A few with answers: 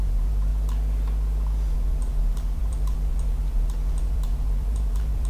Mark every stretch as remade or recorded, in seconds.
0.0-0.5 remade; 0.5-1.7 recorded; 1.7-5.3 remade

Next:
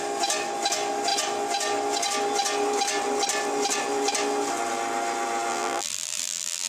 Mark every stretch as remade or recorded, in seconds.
0.0-5.5 recorded; 5.5-6.7 remade

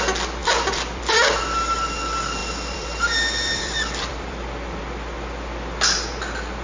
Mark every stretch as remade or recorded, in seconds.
0.0-0.4 recorded; 0.4-1.4 remade; 1.4-2.4 recorded; 2.4-4.8 remade; 4.8-6.6 recorded

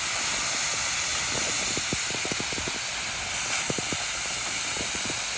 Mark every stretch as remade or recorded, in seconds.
0.0-5.4 recorded